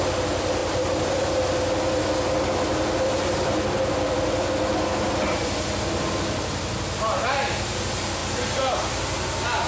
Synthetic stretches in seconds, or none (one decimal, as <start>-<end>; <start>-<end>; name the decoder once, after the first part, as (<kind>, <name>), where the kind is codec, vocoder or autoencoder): 0.6-1.1 (vocoder, BigVGAN v2)